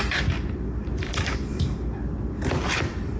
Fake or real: fake